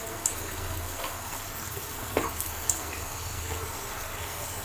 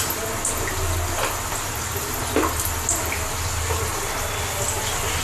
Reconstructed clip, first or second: first